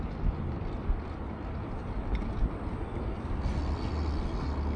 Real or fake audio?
real